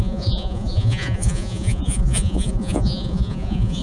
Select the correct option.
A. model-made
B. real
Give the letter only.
A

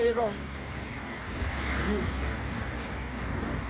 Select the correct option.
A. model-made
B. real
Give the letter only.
A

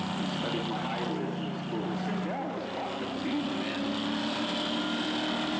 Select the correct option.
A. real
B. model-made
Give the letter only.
A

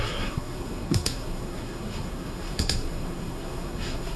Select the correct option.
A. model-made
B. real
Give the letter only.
A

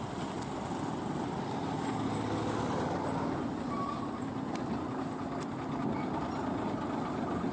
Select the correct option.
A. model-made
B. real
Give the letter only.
B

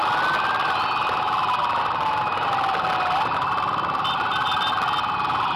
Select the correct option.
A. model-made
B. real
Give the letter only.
B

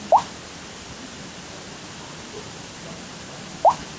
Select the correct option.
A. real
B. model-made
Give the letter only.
A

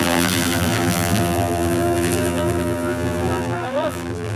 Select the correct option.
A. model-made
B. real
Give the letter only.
A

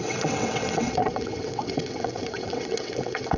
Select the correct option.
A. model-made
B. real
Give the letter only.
A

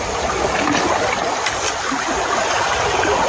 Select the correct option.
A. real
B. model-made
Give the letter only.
A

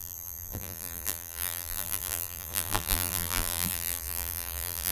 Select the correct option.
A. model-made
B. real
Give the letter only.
A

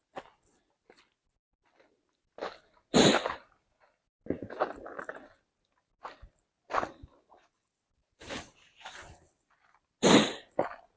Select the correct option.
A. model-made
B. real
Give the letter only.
B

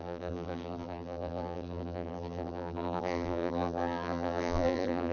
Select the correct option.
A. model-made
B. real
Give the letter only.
A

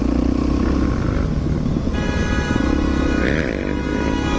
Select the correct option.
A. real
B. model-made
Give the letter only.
A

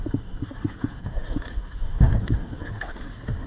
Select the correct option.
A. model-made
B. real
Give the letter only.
A